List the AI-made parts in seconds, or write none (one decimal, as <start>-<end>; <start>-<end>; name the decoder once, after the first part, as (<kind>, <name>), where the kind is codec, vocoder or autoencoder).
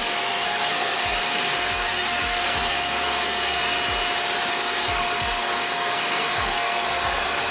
0.0-3.6 (codec, SNAC); 4.5-7.5